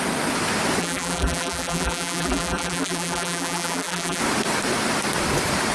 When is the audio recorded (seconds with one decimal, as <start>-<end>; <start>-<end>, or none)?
0.0-0.8; 4.2-5.7